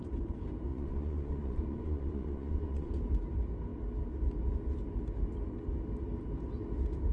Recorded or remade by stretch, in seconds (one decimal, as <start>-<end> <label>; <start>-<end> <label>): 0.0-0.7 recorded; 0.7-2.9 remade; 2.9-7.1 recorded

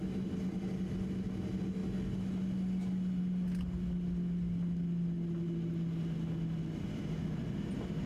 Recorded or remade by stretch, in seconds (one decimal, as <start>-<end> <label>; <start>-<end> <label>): 0.0-8.1 recorded

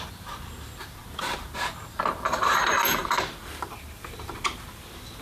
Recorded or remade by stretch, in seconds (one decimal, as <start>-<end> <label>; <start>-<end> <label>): 0.0-5.2 remade

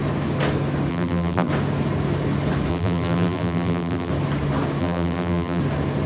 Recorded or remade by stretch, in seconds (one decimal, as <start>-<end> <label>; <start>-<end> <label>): 0.0-0.9 recorded; 0.9-1.5 remade; 1.5-2.7 recorded; 2.7-4.1 remade; 4.1-4.8 recorded; 4.8-5.6 remade; 5.6-6.1 recorded